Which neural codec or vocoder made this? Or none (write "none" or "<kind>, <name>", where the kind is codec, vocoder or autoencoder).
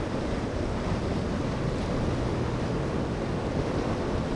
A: none